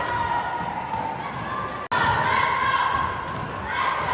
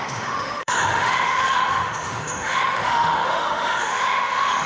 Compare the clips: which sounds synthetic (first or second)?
second